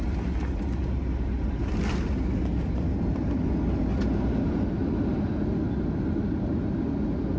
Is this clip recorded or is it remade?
recorded